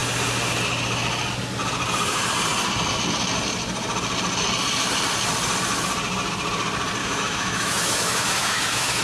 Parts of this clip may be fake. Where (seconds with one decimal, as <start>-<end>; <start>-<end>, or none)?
7.0-9.0

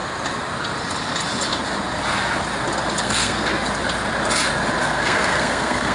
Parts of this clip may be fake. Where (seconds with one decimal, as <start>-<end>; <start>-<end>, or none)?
3.0-3.5; 4.8-5.9

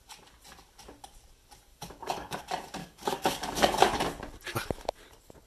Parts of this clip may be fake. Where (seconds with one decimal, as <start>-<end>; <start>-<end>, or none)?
1.7-2.4; 2.8-4.0

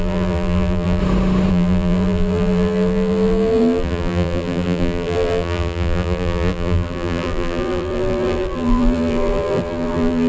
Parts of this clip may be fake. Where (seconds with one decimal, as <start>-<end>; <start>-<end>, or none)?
0.0-1.0; 1.5-10.3

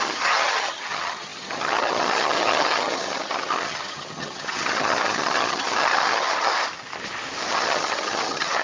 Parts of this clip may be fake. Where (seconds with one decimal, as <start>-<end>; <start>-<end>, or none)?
0.0-6.5; 7.5-8.6